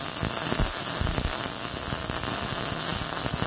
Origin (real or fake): real